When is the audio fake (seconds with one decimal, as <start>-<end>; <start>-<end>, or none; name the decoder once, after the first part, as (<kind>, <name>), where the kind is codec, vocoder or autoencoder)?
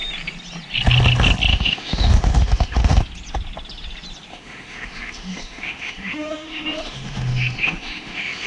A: 1.5-3.0 (autoencoder, DAC-VAE); 4.3-8.5